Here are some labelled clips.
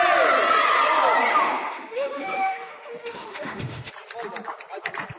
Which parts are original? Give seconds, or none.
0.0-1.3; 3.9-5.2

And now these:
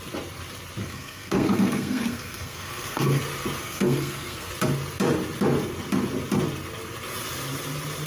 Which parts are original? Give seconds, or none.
0.0-0.8; 3.2-3.6; 4.5-8.1

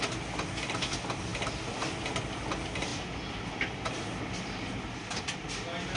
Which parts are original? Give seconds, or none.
0.0-6.0

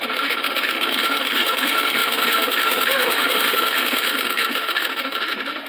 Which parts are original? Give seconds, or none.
none